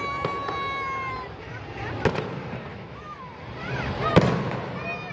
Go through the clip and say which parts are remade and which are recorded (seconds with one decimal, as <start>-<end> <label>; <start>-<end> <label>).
0.0-2.7 recorded; 2.7-3.2 remade; 3.2-5.1 recorded